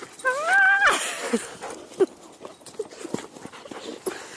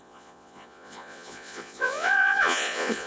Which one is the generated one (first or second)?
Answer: second